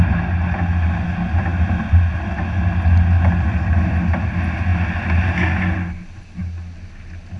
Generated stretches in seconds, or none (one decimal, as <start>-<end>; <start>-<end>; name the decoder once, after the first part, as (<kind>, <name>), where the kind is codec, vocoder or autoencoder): none